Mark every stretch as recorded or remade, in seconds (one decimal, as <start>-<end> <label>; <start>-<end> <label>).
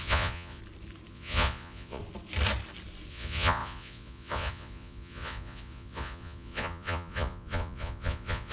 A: 0.0-0.6 remade; 0.6-1.1 recorded; 1.1-2.0 remade; 2.0-3.1 recorded; 3.1-8.5 remade